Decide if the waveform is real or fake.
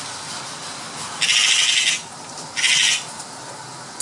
real